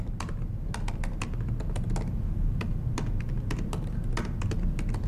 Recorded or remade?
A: recorded